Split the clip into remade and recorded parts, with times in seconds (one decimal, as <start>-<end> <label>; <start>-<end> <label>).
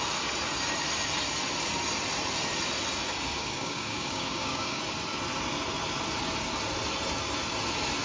0.0-3.4 recorded; 3.4-4.8 remade; 4.8-8.0 recorded